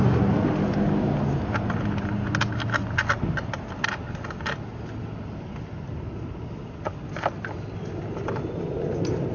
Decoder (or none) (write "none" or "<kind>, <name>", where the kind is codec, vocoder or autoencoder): none